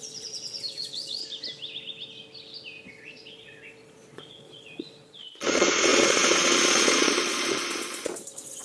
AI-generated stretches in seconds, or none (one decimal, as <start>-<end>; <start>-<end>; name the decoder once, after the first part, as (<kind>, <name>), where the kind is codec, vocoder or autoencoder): 0.0-1.2 (vocoder, Vocos); 2.9-8.6